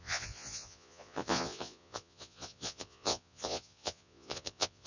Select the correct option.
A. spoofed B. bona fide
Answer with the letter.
A